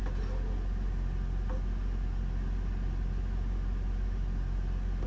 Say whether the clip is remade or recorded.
recorded